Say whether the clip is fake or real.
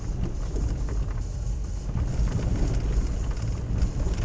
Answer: real